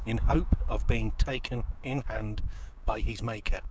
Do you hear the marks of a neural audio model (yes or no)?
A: yes